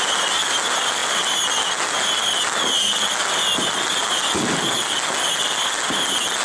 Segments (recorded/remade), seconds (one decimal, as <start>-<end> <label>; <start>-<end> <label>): 0.0-6.4 recorded